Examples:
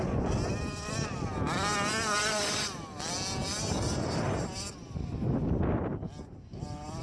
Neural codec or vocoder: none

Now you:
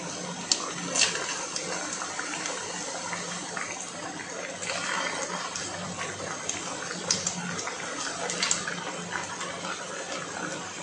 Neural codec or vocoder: none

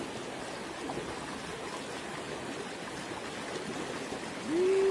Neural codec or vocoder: none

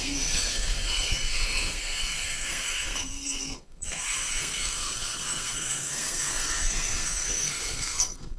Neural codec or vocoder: codec, SNAC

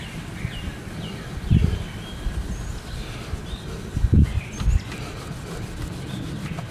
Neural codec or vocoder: none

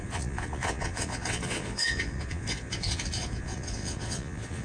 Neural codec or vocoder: vocoder, Vocos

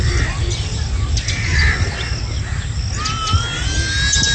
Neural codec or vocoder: none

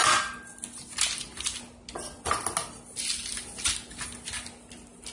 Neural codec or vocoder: none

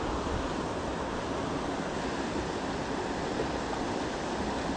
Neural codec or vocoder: none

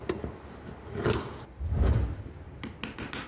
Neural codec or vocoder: none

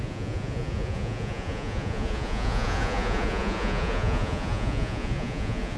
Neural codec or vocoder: vocoder, Vocos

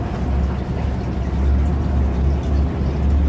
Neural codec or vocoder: none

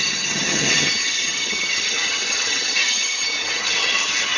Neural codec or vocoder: vocoder, HiFi-GAN